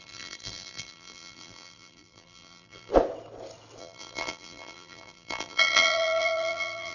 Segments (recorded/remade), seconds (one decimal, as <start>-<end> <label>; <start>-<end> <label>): 0.0-2.9 remade; 2.9-3.8 recorded; 3.8-6.9 remade